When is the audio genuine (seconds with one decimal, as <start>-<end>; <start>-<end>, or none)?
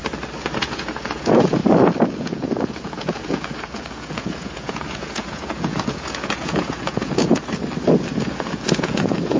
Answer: 0.0-0.6; 1.6-2.1; 7.6-8.1